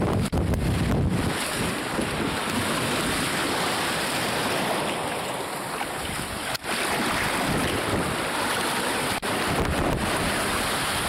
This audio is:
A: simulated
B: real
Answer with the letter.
B